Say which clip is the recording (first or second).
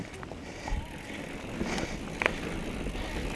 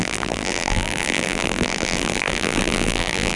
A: first